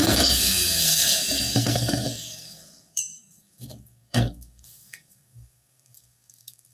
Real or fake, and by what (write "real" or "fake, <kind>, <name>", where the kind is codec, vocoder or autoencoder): fake, codec, SNAC